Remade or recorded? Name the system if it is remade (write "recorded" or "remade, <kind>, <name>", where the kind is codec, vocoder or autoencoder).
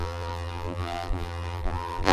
remade, vocoder, BigVGAN v2